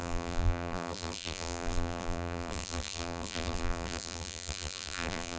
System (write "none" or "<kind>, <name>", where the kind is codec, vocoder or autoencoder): vocoder, BigVGAN v2